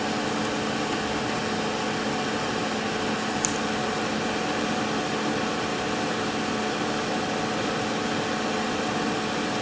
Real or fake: real